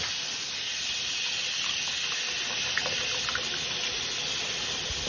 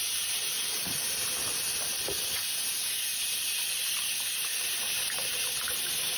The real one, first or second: first